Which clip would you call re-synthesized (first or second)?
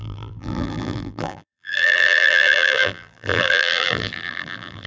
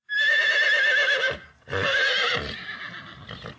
first